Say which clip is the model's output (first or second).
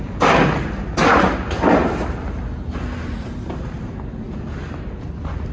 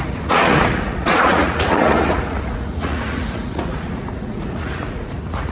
second